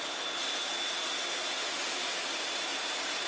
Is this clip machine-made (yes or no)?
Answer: no